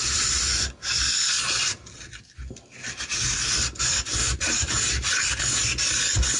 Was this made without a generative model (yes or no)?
yes